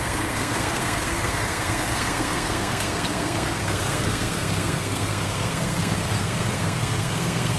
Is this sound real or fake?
fake